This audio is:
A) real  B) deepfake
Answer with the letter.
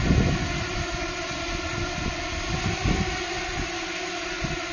A